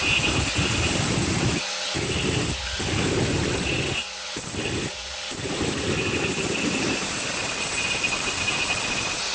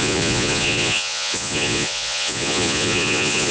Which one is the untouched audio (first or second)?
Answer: first